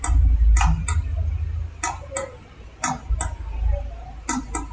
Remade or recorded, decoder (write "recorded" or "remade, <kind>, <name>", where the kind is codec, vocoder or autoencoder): recorded